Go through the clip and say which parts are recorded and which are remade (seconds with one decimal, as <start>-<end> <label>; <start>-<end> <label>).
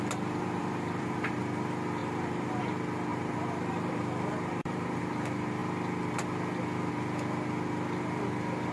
0.0-0.6 recorded; 0.6-1.3 remade; 1.3-2.0 recorded; 2.0-2.6 remade; 2.6-3.1 recorded; 3.1-5.0 remade; 5.0-8.7 recorded